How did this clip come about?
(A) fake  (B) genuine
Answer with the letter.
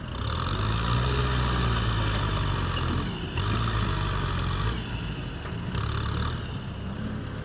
B